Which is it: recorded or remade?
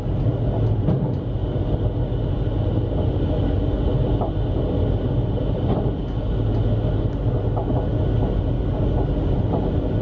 recorded